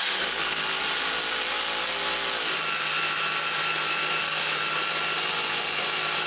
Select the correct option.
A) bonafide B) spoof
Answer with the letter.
A